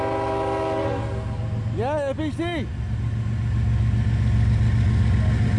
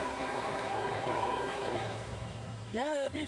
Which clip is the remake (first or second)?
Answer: second